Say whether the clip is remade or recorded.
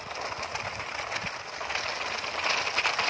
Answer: recorded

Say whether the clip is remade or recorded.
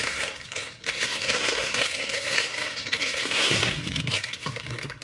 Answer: remade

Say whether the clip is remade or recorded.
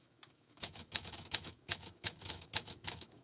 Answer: remade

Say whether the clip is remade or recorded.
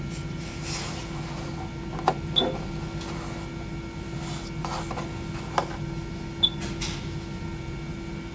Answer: recorded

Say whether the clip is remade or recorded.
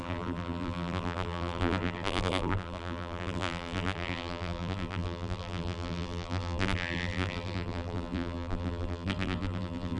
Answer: remade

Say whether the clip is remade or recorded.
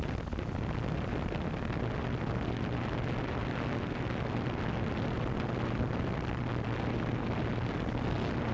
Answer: recorded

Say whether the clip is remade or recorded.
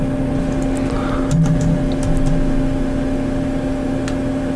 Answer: recorded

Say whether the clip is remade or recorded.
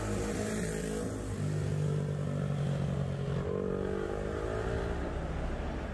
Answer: recorded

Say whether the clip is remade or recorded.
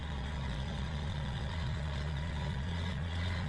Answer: remade